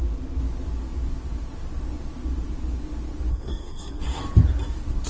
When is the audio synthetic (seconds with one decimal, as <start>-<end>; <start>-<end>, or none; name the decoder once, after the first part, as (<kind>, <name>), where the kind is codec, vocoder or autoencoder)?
3.3-4.0 (codec, SNAC)